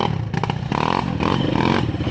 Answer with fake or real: real